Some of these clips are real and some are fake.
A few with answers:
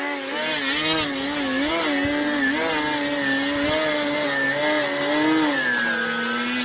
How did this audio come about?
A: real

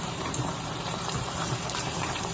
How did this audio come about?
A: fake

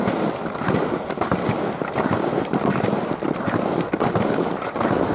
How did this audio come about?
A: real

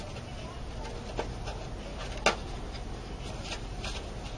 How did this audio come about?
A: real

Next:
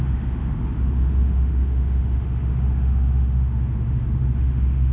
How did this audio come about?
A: fake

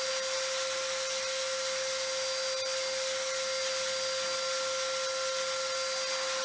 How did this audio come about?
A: real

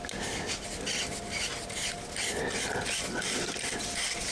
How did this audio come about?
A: real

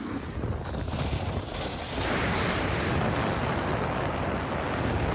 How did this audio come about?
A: real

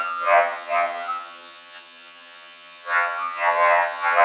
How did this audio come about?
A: fake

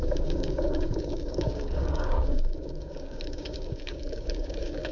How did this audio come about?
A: fake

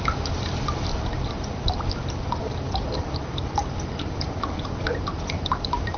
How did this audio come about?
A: fake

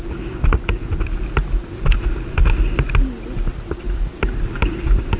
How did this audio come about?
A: real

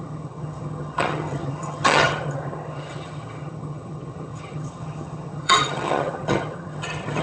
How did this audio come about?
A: fake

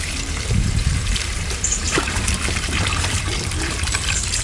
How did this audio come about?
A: fake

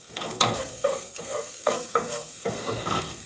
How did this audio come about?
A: fake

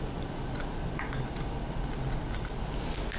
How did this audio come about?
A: real